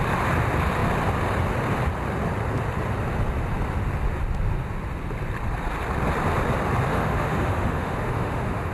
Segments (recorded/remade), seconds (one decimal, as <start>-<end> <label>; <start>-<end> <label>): 0.0-6.9 recorded; 6.9-8.7 remade